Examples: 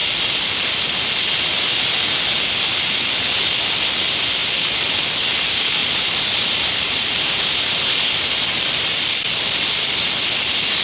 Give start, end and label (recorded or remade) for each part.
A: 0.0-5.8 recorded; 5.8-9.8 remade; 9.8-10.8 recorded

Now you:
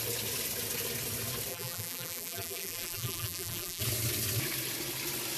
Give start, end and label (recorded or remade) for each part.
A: 0.0-1.5 recorded; 1.5-3.8 remade; 3.8-5.4 recorded

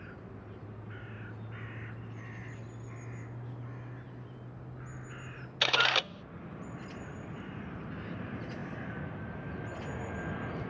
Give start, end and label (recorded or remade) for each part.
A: 0.0-10.7 recorded